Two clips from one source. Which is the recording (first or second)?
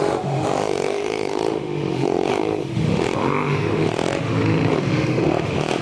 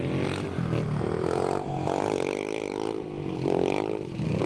second